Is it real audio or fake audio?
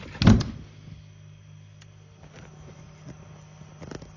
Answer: real